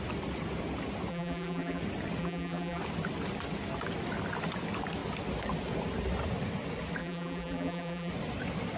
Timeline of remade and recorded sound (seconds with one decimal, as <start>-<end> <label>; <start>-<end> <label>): 0.0-1.1 recorded; 1.1-1.8 remade; 1.8-2.2 recorded; 2.2-2.8 remade; 2.8-7.0 recorded; 7.0-8.1 remade; 8.1-8.8 recorded